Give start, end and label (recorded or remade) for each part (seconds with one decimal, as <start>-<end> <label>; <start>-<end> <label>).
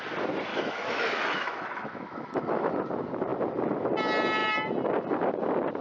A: 0.0-0.5 recorded; 0.5-2.7 remade; 2.7-5.8 recorded